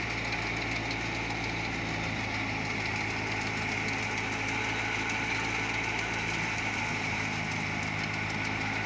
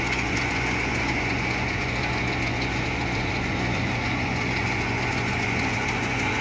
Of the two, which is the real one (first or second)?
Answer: first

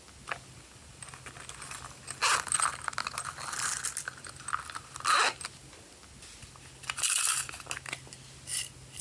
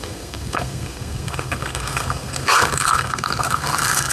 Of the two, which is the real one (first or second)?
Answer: first